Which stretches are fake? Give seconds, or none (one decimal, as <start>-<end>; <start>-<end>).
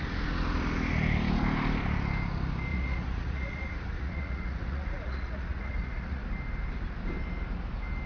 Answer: 2.7-6.2